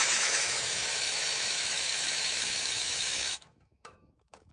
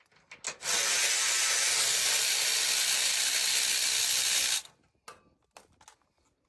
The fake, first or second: first